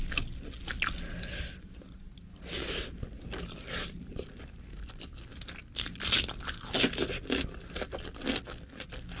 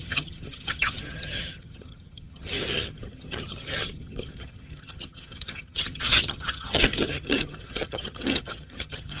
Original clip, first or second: first